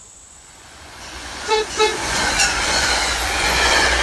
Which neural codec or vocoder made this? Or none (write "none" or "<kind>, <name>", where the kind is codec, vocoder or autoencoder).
vocoder, Vocos